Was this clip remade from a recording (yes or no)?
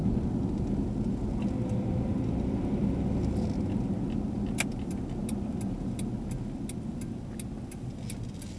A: no